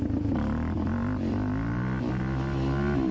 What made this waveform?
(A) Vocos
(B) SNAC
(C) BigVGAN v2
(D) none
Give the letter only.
D